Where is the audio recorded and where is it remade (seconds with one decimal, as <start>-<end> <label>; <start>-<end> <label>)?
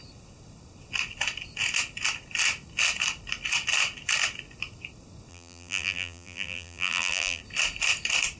0.0-5.3 recorded; 5.3-7.4 remade; 7.4-8.4 recorded